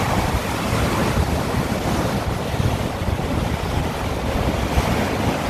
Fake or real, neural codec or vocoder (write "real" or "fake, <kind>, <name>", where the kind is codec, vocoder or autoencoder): real